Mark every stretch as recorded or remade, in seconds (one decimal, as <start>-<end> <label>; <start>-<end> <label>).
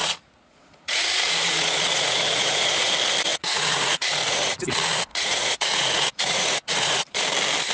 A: 0.0-2.9 remade; 2.9-3.3 recorded; 3.3-4.6 remade; 4.6-5.1 recorded; 5.1-7.2 remade; 7.2-7.7 recorded